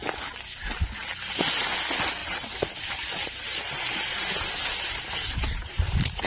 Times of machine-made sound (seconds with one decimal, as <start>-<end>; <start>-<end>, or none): 2.2-6.3